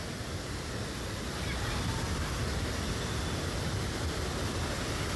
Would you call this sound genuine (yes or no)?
yes